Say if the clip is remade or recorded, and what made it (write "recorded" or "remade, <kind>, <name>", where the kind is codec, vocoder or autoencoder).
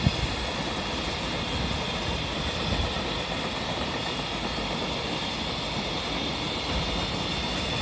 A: recorded